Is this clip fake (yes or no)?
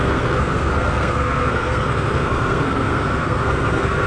yes